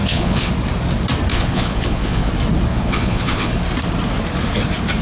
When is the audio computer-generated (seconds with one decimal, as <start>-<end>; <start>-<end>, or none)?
0.0-0.5; 1.3-2.3; 2.7-3.5